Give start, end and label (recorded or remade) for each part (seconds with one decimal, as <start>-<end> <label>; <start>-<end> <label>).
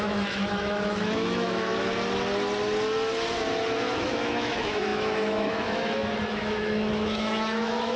0.0-1.7 remade; 1.7-4.0 recorded; 4.0-8.0 remade